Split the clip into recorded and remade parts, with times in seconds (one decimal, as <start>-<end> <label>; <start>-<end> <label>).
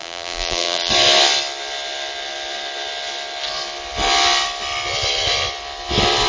0.0-0.9 remade; 0.9-6.3 recorded